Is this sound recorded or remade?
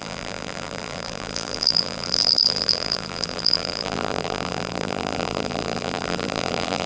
remade